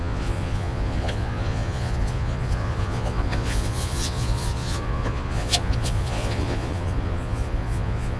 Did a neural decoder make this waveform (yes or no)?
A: yes